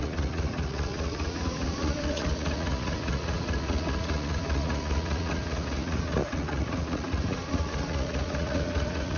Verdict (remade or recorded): remade